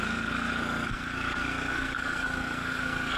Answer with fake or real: fake